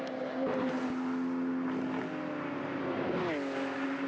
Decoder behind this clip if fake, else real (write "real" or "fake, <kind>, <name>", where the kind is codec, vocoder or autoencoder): real